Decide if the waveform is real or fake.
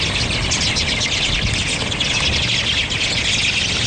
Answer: real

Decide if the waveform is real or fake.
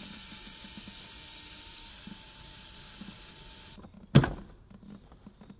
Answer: real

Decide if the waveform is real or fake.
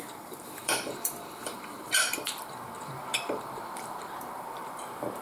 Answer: fake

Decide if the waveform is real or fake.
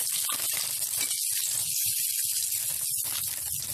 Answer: real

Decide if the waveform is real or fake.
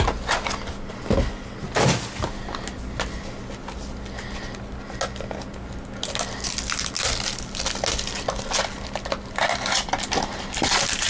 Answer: real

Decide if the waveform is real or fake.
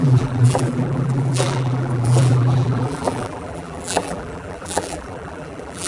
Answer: fake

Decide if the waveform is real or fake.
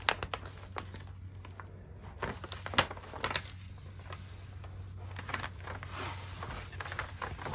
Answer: real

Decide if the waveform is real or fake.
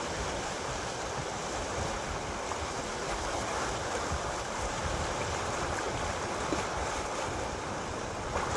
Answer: fake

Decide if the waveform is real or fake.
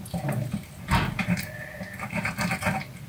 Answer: fake